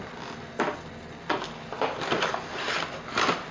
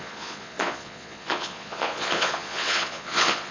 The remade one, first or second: second